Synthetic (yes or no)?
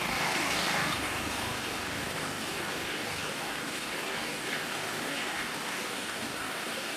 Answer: yes